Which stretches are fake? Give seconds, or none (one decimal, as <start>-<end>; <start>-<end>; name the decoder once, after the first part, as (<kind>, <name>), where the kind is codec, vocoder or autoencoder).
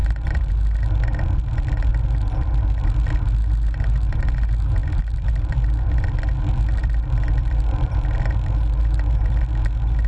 0.0-0.5 (vocoder, BigVGAN v2); 1.9-2.6; 4.8-6.0; 6.8-9.5